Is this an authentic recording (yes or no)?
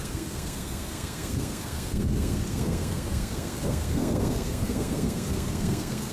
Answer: no